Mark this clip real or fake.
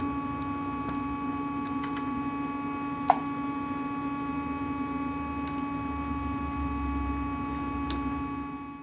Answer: real